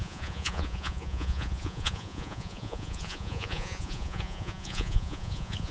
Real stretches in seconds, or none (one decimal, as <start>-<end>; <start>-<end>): none